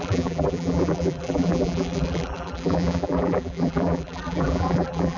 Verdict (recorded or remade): remade